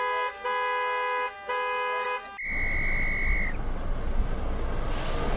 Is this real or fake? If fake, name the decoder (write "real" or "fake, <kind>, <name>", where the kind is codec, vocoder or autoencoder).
real